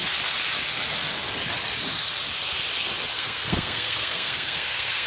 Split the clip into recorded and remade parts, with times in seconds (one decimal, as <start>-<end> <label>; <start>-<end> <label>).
0.0-3.1 recorded; 3.1-5.1 remade